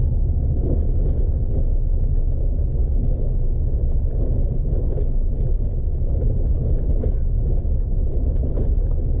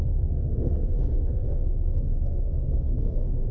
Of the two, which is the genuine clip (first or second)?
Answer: first